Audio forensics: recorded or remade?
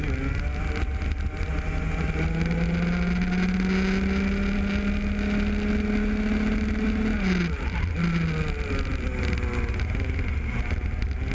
recorded